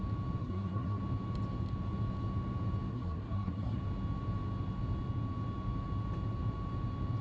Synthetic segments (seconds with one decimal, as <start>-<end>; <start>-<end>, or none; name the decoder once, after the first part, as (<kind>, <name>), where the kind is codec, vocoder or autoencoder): 0.4-1.0 (codec, SNAC); 2.9-3.8

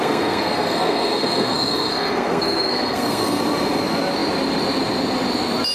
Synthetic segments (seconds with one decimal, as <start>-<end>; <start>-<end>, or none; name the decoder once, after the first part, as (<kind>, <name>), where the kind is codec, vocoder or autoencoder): 0.0-3.4 (codec, SNAC)

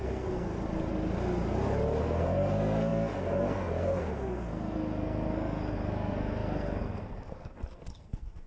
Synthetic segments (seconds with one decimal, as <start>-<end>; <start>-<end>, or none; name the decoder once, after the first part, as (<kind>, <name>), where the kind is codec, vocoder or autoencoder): 0.0-0.5 (codec, SNAC); 2.0-8.5

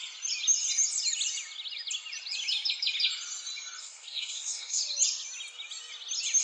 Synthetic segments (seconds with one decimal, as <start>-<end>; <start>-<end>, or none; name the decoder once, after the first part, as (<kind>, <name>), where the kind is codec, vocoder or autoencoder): 3.8-4.8 (codec, SNAC)

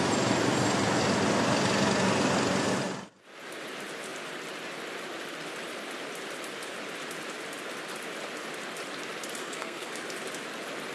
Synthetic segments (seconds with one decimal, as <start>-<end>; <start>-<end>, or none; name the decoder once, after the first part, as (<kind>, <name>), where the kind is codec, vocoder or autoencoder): 9.4-9.9 (codec, SNAC)

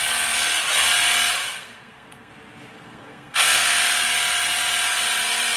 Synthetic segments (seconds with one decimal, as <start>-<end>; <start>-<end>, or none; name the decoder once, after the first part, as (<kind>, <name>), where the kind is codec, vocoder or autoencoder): 1.4-2.3 (codec, SNAC); 2.7-3.8

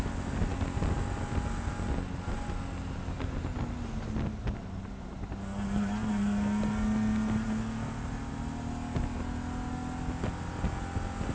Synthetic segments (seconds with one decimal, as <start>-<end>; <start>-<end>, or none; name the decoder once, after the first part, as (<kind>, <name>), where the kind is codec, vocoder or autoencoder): none

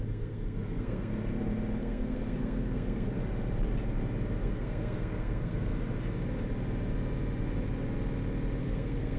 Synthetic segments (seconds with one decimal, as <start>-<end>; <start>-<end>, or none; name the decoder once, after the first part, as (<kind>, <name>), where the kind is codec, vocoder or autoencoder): 0.0-1.1 (codec, SNAC); 1.8-3.2; 4.4-5.7; 8.6-9.2